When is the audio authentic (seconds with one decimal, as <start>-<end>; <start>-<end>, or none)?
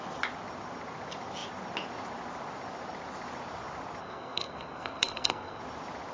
0.0-4.0; 5.6-6.1